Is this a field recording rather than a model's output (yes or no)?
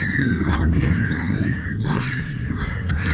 no